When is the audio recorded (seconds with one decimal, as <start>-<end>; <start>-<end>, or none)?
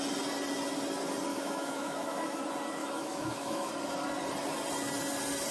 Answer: 0.0-1.3; 2.4-2.8; 3.7-5.5